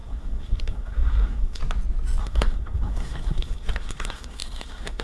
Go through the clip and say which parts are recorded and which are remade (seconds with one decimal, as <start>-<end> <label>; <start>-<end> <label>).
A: 0.0-1.6 remade; 1.6-2.2 recorded; 2.2-5.0 remade